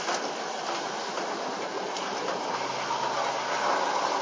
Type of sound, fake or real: real